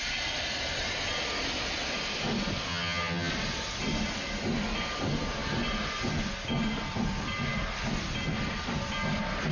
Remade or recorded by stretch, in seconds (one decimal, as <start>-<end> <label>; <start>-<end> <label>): 0.0-2.7 recorded; 2.7-3.3 remade; 3.3-9.5 recorded